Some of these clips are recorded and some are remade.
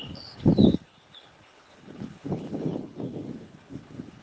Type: remade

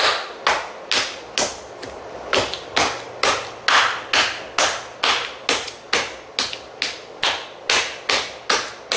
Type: recorded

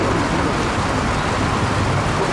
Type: recorded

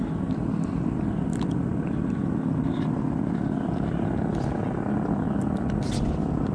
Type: recorded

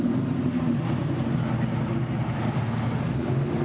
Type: recorded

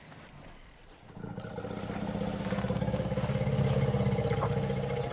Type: recorded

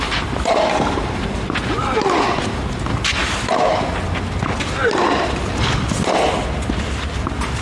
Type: recorded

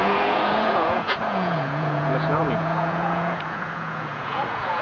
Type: remade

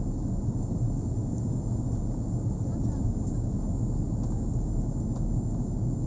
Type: recorded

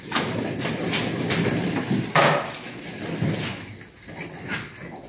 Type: recorded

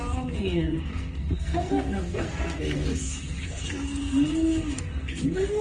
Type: remade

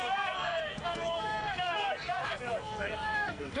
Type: remade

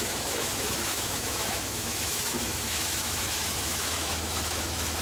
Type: remade